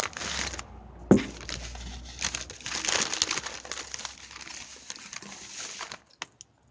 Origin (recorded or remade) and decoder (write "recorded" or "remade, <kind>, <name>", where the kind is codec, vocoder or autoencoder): recorded